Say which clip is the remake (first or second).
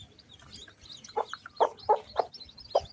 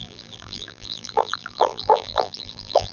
second